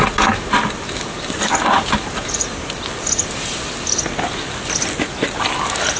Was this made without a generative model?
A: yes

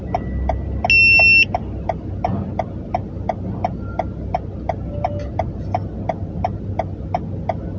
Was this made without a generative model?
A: yes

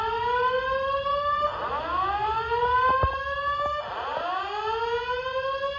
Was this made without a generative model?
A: yes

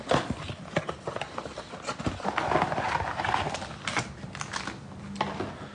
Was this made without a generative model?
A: yes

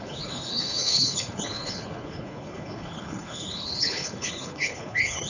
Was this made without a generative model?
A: no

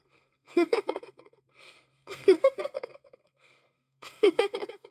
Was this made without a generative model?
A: no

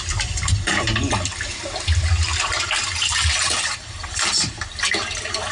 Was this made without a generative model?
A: no